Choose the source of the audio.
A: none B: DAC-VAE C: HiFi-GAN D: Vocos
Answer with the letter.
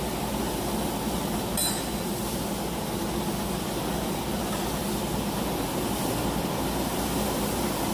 A